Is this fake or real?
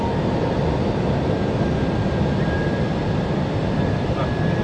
real